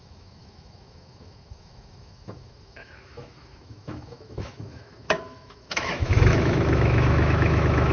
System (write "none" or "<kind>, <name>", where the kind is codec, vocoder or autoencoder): autoencoder, DAC-VAE